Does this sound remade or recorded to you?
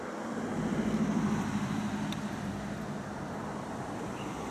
remade